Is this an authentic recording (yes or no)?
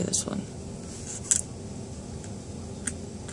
yes